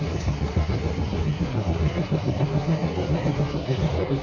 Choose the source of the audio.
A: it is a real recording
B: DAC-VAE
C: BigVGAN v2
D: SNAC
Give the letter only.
D